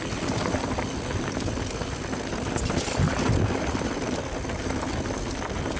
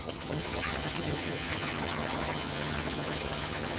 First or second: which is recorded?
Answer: first